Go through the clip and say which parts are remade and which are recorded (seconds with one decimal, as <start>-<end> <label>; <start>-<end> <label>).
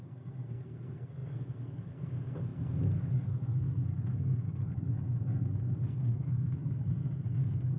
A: 0.0-7.8 remade